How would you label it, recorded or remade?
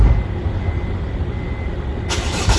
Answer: recorded